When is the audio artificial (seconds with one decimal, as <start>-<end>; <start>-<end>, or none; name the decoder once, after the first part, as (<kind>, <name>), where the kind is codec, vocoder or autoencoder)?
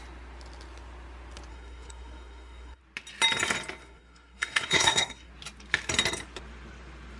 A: 1.5-2.8 (codec, SNAC); 3.8-5.3